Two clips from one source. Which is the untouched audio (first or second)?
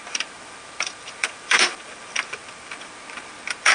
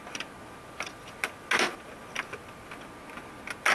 second